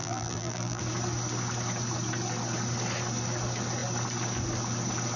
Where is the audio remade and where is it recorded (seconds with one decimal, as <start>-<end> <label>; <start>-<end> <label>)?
0.0-0.8 remade; 0.8-5.2 recorded